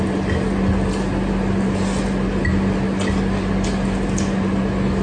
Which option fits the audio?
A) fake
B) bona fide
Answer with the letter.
B